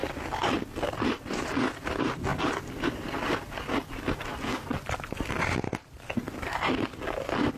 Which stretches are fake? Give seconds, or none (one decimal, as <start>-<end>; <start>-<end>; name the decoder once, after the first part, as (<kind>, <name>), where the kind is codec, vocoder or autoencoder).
none